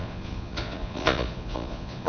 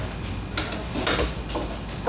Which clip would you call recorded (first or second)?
second